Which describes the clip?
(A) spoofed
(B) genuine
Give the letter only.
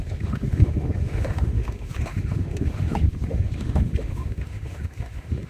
A